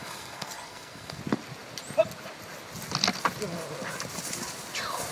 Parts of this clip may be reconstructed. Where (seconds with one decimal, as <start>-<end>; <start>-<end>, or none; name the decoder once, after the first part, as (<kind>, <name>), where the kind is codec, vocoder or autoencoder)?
0.0-1.2 (codec, SNAC)